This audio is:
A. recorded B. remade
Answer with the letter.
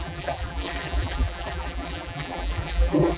B